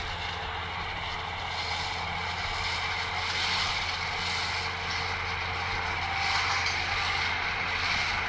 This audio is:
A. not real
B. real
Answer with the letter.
B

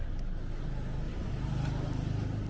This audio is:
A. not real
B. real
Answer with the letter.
B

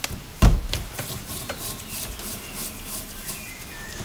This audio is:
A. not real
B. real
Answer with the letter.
B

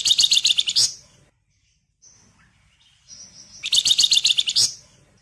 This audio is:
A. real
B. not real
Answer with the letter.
A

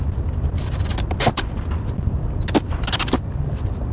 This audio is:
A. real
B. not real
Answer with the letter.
A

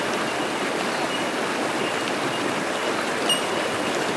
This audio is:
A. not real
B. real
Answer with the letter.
B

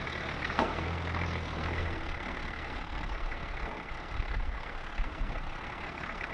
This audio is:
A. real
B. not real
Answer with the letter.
B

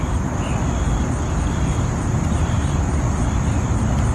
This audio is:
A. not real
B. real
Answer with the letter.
B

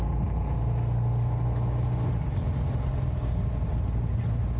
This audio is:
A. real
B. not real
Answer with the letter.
A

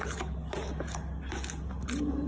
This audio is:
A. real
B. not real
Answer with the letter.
A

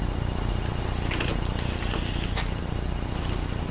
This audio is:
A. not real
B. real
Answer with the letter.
B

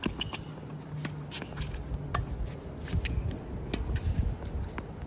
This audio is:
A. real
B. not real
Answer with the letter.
A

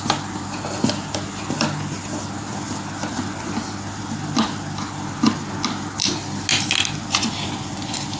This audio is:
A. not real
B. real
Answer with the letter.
B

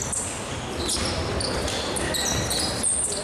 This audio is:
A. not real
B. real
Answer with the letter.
B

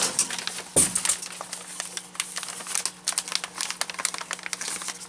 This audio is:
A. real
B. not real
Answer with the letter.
A